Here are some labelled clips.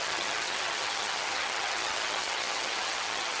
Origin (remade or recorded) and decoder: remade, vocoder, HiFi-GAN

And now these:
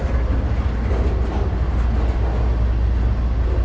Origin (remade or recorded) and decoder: recorded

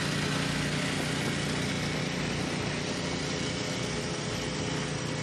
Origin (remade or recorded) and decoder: recorded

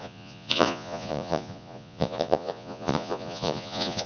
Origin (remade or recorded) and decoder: remade, vocoder, Vocos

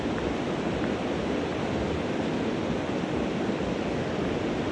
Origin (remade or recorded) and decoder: recorded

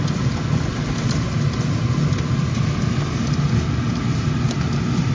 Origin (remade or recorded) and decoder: recorded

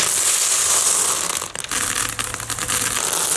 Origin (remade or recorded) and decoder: recorded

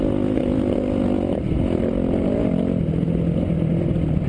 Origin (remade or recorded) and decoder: recorded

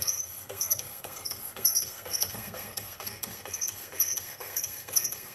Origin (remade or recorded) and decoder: remade, codec, SNAC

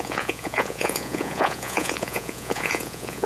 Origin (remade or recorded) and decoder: remade, vocoder, Vocos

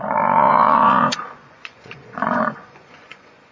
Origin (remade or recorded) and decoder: remade, vocoder, Vocos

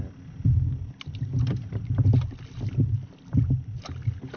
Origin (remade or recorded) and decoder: recorded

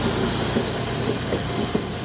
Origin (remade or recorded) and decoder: recorded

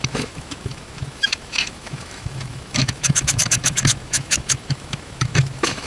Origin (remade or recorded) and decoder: remade, autoencoder, DAC-VAE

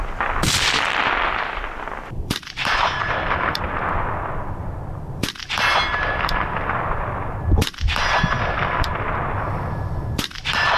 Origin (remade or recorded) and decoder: remade, vocoder, BigVGAN v2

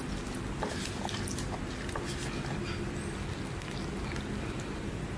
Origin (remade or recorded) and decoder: recorded